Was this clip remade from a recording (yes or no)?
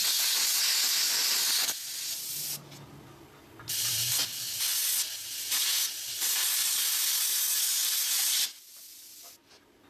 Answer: no